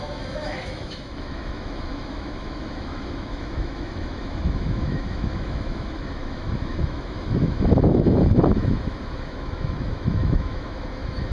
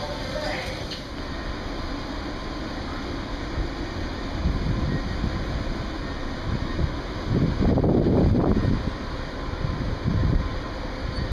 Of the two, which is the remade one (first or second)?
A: first